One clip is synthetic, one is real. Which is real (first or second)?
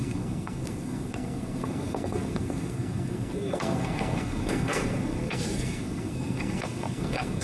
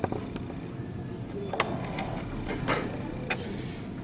second